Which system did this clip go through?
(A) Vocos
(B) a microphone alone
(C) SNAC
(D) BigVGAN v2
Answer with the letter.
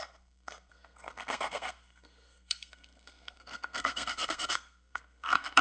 C